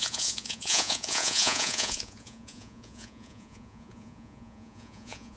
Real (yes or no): no